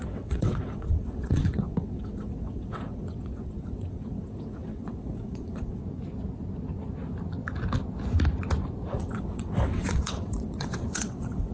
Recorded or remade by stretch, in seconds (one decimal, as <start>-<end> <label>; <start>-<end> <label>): 0.0-5.8 remade; 5.8-8.9 recorded; 8.9-11.5 remade